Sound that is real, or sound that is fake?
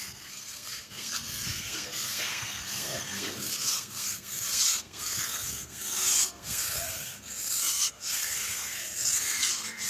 fake